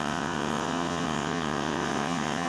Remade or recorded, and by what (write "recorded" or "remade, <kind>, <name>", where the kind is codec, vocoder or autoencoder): remade, vocoder, WaveNeXt